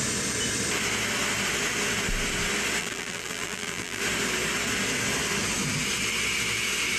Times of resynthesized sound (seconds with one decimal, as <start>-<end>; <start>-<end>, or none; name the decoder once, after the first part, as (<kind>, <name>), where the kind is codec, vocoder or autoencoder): 2.8-4.0 (vocoder, BigVGAN v2)